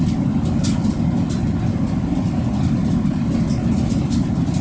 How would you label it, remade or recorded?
recorded